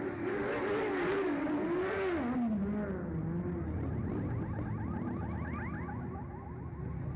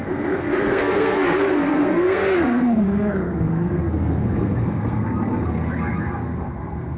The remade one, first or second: second